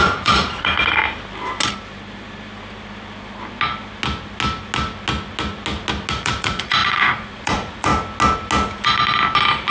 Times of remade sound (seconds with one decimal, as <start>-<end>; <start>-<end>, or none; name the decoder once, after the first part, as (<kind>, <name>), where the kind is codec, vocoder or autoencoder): 0.0-1.0 (vocoder, Vocos); 6.1-7.9